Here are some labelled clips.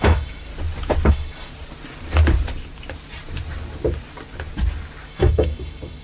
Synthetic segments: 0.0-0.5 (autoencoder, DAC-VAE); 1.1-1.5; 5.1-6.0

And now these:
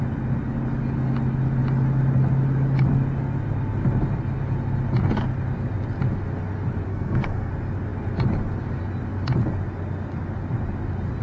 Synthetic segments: 6.9-7.5 (codec, SNAC)

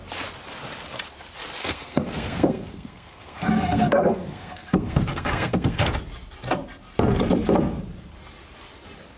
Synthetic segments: 1.6-5.9 (codec, SNAC)

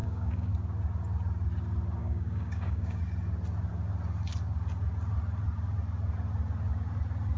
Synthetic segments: 0.0-0.5 (codec, DAC); 2.0-3.0

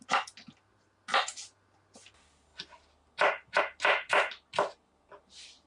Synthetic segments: none